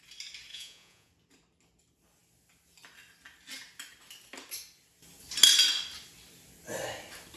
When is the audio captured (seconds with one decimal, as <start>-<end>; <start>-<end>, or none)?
0.0-0.5; 1.1-7.4